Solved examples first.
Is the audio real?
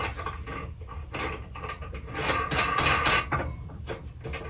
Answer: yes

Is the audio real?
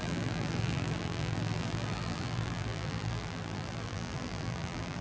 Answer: no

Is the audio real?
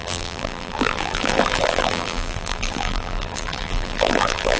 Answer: no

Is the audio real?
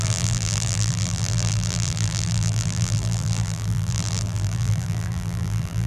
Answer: no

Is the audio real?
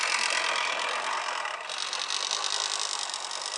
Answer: yes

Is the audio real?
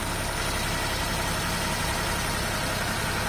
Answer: yes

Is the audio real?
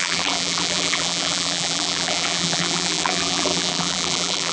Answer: no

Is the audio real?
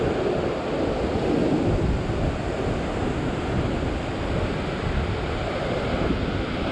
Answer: yes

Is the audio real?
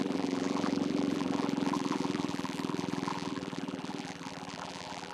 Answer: no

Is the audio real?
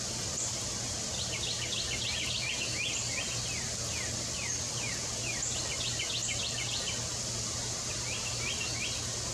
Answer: yes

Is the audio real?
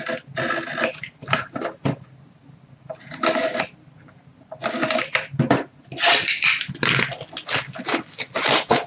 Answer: yes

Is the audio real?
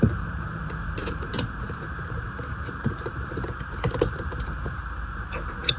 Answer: no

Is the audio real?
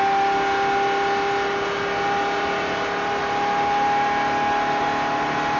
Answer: yes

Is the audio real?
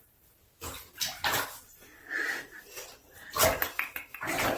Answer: yes